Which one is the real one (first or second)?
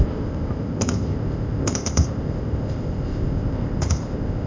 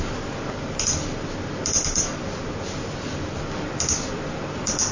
second